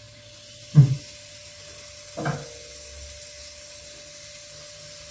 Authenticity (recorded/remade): recorded